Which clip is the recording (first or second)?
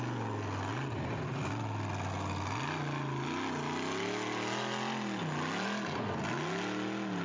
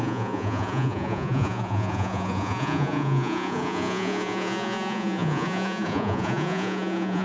first